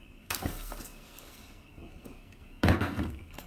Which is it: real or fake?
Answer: fake